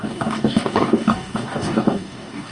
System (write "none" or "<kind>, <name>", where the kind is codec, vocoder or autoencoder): codec, DAC